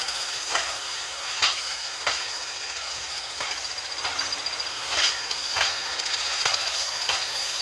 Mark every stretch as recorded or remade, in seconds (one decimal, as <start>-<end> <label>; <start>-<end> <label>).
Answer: 0.0-3.5 remade; 3.5-4.7 recorded; 4.7-7.6 remade